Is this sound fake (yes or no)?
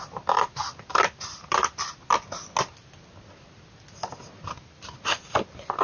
no